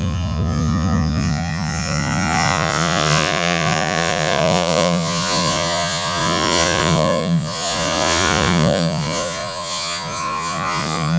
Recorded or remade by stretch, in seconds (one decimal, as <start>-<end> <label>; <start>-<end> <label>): 0.0-11.2 remade